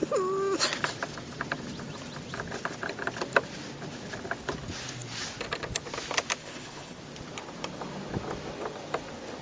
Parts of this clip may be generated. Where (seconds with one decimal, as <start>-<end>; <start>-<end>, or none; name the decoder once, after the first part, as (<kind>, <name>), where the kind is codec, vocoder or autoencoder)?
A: 6.4-7.0 (codec, HILCodec)